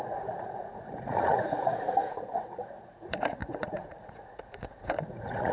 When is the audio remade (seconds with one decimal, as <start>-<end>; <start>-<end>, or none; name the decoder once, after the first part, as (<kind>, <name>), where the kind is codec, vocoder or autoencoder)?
0.0-5.5 (vocoder, Vocos)

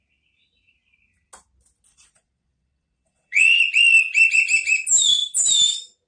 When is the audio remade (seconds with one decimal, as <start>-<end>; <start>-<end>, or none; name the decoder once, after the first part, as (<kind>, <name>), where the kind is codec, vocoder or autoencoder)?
1.9-3.6 (vocoder, Vocos)

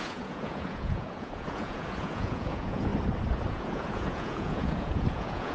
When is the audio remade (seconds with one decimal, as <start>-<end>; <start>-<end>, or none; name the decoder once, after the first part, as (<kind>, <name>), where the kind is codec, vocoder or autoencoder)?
0.0-2.9 (vocoder, Vocos); 3.5-5.5

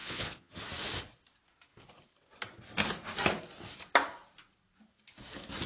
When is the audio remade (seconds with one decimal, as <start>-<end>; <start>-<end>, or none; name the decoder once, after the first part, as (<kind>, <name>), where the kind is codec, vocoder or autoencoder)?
0.0-0.6 (vocoder, Vocos)

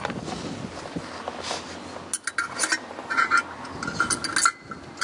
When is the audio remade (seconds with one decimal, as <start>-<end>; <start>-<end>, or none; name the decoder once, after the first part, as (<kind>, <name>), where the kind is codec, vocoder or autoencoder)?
none

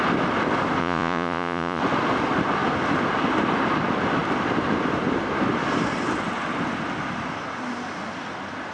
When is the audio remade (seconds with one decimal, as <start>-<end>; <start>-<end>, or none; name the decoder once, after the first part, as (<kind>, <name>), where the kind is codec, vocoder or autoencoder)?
0.8-1.8 (vocoder, Vocos)